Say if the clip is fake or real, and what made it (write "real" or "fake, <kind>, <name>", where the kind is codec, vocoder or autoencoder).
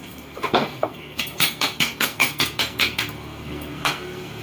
fake, codec, SNAC